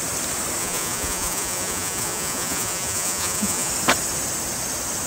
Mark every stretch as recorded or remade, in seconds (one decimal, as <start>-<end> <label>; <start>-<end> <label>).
0.0-0.6 recorded; 0.6-3.7 remade; 3.7-5.1 recorded